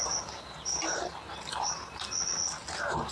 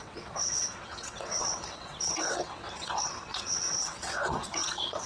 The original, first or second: first